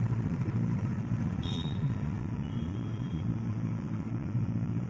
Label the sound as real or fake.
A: fake